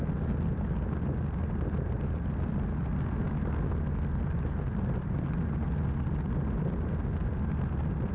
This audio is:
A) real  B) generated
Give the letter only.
A